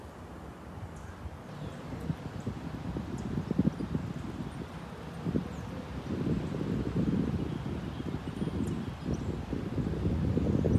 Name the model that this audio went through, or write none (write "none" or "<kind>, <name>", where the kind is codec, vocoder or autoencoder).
none